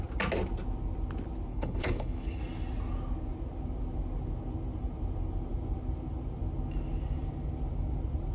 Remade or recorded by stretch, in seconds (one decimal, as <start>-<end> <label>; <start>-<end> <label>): 0.0-1.5 recorded; 1.5-2.4 remade; 2.4-8.3 recorded